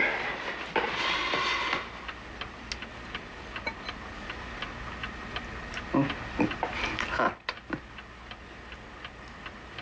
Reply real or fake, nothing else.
real